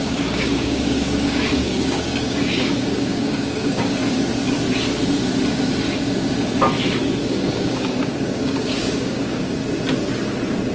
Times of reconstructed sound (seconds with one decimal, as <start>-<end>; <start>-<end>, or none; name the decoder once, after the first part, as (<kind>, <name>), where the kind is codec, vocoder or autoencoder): 0.0-4.0 (codec, DAC); 7.2-9.6